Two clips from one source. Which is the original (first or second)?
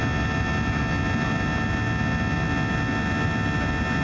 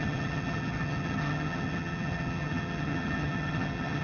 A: first